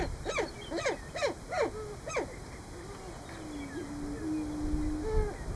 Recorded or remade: recorded